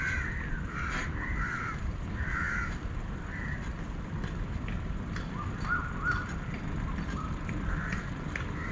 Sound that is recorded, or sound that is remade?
recorded